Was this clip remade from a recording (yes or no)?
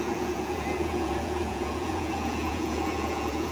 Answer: yes